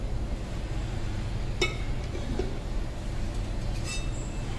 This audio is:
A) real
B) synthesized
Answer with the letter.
A